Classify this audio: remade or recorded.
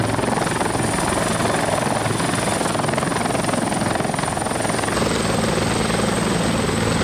recorded